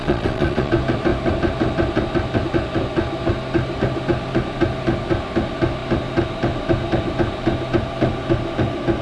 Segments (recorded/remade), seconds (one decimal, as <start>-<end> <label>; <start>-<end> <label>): 0.0-0.7 remade; 0.7-9.0 recorded